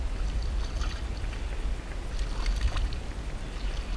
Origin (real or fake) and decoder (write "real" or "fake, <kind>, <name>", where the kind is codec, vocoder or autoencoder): real